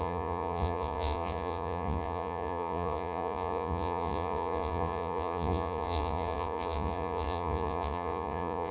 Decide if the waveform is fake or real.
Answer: fake